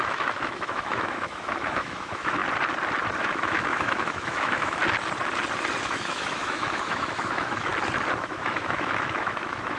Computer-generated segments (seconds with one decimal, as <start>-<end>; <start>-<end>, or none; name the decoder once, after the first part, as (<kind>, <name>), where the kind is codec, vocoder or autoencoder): 0.0-2.4 (autoencoder, DAC-VAE); 3.2-4.8; 5.8-7.7; 8.2-9.8